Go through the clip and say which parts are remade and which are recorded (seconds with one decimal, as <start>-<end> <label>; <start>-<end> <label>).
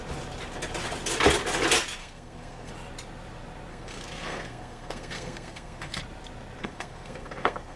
0.0-2.0 recorded; 2.0-2.7 remade; 2.7-3.7 recorded; 3.7-6.0 remade; 6.0-6.6 recorded; 6.6-7.8 remade